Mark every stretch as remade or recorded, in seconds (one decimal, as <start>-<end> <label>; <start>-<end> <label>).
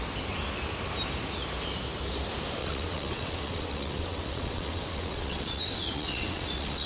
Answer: 0.0-2.6 recorded; 2.6-6.9 remade